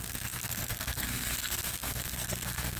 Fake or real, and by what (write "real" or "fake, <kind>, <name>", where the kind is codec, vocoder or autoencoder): fake, codec, SNAC